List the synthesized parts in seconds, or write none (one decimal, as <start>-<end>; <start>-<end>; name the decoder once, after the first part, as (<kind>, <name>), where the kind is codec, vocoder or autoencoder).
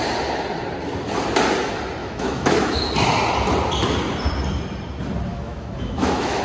2.0-2.8 (autoencoder, DAC-VAE); 5.3-6.4